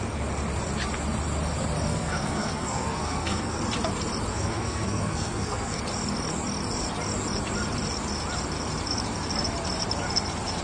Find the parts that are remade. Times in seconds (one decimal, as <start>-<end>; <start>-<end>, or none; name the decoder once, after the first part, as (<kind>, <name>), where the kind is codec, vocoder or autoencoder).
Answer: 1.9-3.6 (codec, SNAC); 4.3-5.8